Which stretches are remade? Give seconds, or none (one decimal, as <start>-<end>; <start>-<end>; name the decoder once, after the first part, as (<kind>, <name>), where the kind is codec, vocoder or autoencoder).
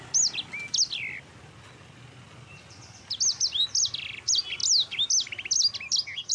none